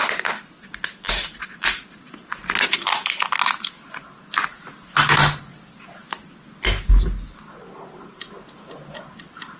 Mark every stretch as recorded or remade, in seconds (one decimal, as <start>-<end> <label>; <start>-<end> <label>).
0.0-9.6 recorded